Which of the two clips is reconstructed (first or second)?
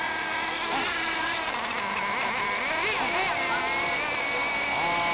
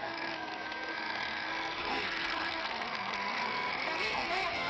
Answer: second